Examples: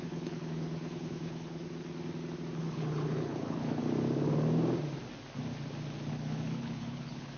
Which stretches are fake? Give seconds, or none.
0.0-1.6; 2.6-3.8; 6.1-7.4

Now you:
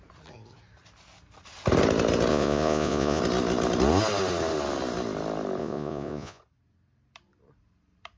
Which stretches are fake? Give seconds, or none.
2.3-3.2; 5.6-6.4

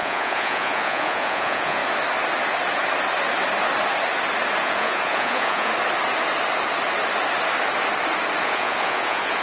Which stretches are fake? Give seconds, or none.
0.0-1.8; 4.6-5.7; 8.4-9.4